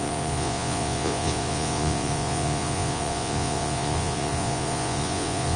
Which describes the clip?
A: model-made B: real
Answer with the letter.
A